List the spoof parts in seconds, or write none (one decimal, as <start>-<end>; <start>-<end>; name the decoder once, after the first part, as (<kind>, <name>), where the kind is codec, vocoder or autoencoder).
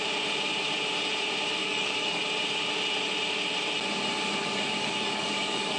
1.6-2.2 (codec, DAC); 4.4-5.8